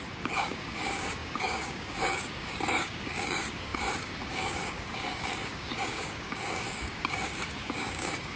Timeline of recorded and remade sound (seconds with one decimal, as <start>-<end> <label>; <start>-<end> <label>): 0.0-8.4 remade